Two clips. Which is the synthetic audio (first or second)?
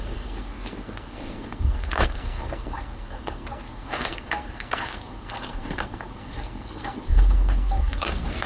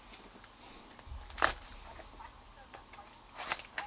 first